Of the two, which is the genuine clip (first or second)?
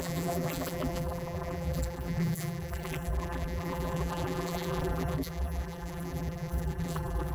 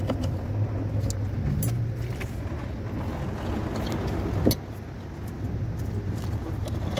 second